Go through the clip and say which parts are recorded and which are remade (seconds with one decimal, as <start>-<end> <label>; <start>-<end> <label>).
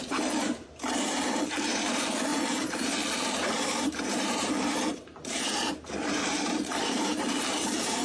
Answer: 0.0-8.0 remade